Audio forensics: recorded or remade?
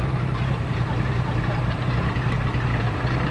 remade